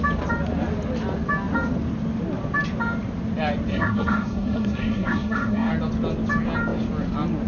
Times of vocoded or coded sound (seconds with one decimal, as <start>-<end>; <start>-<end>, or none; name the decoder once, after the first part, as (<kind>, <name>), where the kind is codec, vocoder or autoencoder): 3.7-5.7 (codec, SNAC)